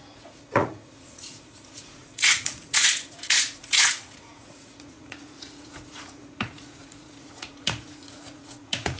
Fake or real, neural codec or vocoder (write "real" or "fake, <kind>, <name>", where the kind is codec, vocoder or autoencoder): fake, vocoder, Vocos